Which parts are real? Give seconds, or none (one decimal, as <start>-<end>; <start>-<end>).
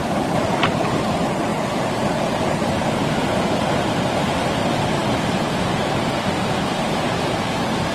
0.0-7.9